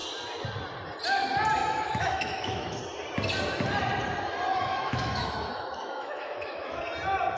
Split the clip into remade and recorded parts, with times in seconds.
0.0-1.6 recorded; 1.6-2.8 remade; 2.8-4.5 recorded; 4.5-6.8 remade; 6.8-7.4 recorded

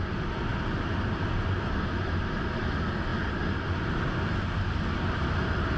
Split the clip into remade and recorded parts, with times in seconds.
0.0-5.8 recorded

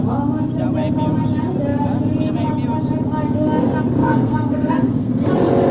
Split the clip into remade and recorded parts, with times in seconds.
0.0-4.0 recorded; 4.0-5.3 remade; 5.3-5.7 recorded